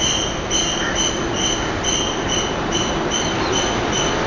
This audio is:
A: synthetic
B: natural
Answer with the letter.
B